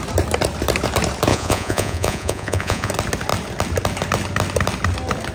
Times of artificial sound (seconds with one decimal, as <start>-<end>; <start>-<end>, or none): 1.3-2.9